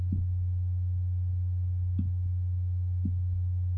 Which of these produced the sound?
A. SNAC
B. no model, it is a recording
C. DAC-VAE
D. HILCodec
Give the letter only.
B